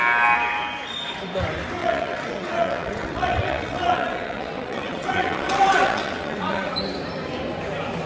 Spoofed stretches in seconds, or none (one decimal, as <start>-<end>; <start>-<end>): 1.8-6.7